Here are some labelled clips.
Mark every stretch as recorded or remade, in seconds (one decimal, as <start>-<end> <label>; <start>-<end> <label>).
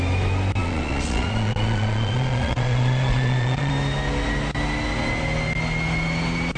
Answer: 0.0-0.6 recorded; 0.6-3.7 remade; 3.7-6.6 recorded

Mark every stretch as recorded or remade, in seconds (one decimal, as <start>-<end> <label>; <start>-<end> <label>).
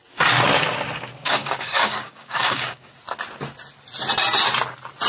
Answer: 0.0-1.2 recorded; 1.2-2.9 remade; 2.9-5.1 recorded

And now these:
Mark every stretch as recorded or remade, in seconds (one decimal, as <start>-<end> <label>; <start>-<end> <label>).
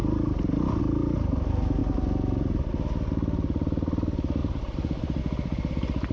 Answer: 0.0-0.8 remade; 0.8-1.8 recorded; 1.8-2.7 remade; 2.7-4.4 recorded; 4.4-5.2 remade; 5.2-6.1 recorded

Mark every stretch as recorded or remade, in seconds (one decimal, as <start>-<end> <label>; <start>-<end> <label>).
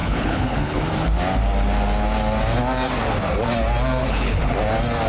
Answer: 0.0-0.8 remade; 0.8-4.0 recorded; 4.0-4.5 remade; 4.5-5.1 recorded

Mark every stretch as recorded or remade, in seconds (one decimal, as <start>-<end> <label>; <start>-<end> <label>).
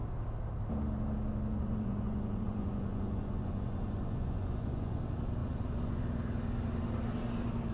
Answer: 0.0-1.5 recorded; 1.5-5.0 remade; 5.0-5.4 recorded; 5.4-6.0 remade; 6.0-7.7 recorded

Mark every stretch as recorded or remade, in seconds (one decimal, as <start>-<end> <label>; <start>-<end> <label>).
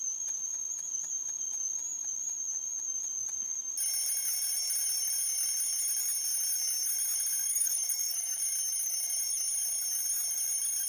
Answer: 0.0-7.5 recorded; 7.5-8.4 remade; 8.4-10.9 recorded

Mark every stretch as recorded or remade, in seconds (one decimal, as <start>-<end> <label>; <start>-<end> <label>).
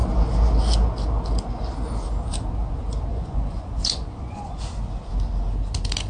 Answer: 0.0-3.1 recorded; 3.1-4.6 remade; 4.6-6.1 recorded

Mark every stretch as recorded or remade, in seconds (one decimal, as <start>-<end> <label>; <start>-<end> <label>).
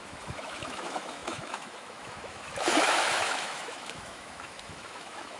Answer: 0.0-5.4 remade